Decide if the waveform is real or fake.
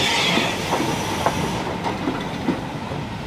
real